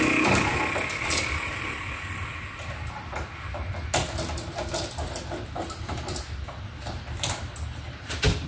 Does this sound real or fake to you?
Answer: real